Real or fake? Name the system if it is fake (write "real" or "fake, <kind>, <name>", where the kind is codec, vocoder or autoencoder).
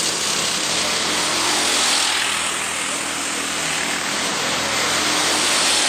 real